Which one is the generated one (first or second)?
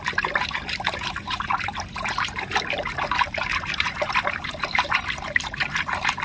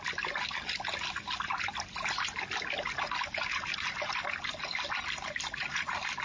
first